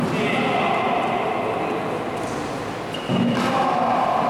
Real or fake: real